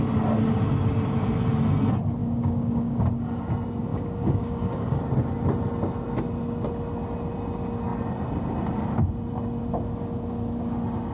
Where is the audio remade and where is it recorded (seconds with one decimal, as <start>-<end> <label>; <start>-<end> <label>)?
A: 0.0-2.2 recorded; 2.2-3.5 remade; 3.5-3.9 recorded; 3.9-5.0 remade; 5.0-11.1 recorded